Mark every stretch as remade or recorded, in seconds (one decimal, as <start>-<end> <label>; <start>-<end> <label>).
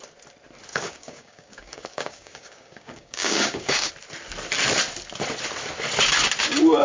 0.0-0.7 recorded; 0.7-3.9 remade; 3.9-6.8 recorded